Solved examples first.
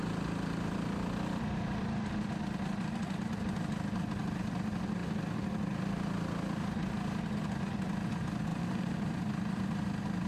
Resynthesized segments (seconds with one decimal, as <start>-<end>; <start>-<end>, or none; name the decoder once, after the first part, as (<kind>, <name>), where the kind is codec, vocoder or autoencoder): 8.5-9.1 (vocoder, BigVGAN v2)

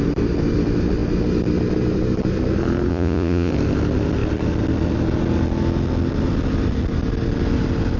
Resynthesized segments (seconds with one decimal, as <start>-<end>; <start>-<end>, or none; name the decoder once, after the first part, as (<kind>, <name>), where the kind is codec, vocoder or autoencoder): 2.9-3.5 (vocoder, Vocos)

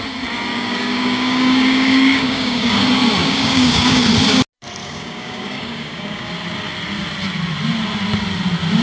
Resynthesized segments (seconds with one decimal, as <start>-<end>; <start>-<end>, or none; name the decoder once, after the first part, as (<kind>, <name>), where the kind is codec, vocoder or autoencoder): 0.5-2.8 (codec, DAC); 3.2-4.0; 4.8-6.3

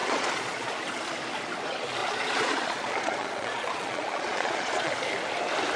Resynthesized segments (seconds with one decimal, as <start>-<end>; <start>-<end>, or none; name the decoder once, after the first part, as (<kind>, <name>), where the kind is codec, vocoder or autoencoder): 0.0-0.7 (vocoder, Vocos); 2.0-4.9